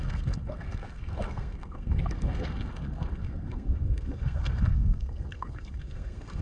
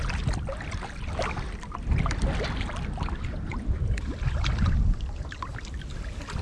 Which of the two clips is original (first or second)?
second